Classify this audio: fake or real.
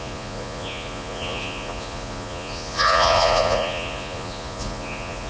fake